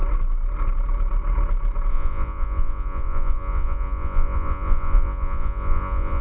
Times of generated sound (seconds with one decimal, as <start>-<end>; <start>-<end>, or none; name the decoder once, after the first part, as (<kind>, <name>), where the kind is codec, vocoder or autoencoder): 1.9-6.2 (vocoder, Vocos)